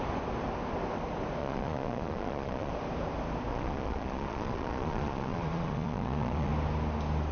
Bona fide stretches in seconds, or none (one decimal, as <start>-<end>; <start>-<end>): 0.0-1.4; 2.7-3.5; 6.5-7.3